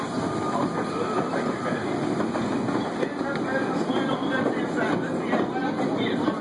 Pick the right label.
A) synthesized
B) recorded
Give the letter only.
B